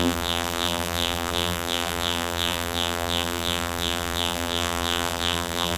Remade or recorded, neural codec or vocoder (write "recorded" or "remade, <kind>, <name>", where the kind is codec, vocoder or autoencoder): remade, vocoder, BigVGAN v2